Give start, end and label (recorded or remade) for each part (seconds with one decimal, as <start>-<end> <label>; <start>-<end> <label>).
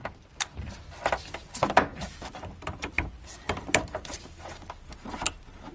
0.0-1.9 recorded; 1.9-4.2 remade; 4.2-5.7 recorded